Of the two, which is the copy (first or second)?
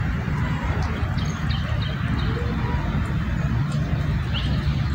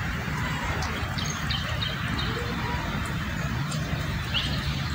second